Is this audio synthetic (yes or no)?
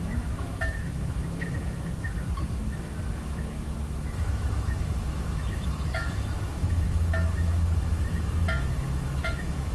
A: yes